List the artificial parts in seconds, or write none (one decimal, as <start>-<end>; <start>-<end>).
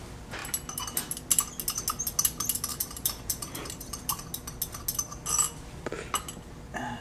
2.7-4.3